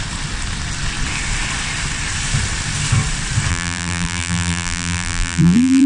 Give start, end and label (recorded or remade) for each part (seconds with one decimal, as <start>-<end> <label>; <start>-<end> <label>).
0.0-3.5 recorded; 3.5-5.9 remade